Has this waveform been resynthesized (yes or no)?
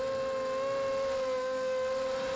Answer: no